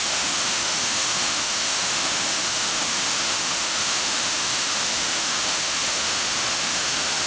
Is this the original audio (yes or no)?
no